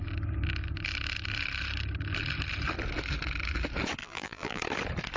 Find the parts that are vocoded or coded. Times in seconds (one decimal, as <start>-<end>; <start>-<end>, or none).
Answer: 4.0-4.6